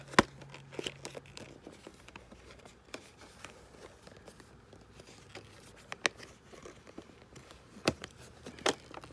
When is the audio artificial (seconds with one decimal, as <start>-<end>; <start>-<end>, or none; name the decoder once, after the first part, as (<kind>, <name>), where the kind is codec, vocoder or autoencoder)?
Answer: 1.9-3.1 (vocoder, BigVGAN v2); 6.6-8.2